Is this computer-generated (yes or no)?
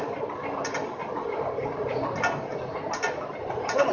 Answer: no